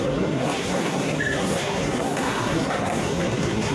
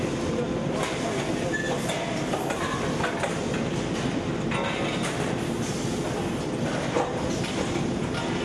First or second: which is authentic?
second